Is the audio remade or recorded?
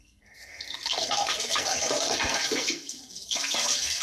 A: remade